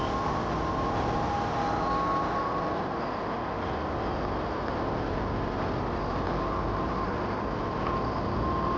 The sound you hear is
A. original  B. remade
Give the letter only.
A